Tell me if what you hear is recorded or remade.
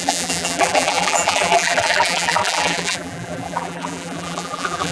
remade